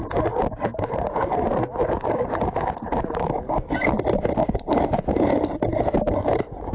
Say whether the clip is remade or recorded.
recorded